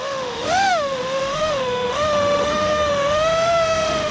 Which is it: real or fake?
fake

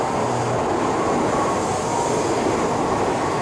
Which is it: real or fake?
real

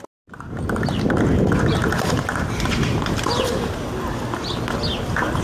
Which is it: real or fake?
real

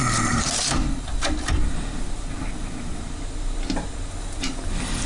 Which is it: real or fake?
real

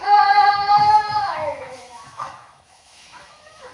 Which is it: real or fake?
fake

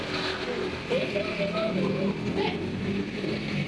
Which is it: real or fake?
real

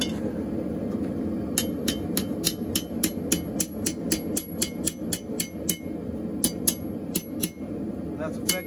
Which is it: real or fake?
real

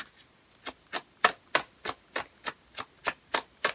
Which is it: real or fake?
real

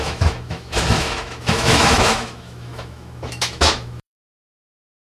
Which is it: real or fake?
fake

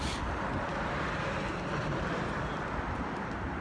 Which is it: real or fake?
real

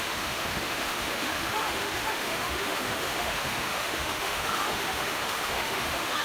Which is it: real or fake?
fake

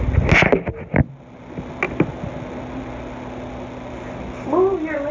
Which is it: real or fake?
real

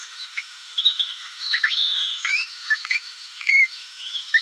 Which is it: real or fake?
fake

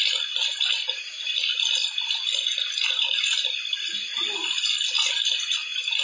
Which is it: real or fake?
real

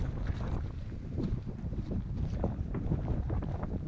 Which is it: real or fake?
real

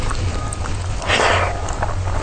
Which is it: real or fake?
real